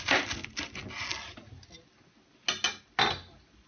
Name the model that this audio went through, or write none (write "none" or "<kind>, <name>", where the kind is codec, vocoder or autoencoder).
none